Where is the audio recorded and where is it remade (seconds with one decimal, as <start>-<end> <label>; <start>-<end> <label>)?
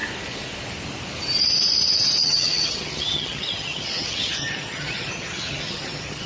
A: 0.0-2.2 recorded; 2.2-6.3 remade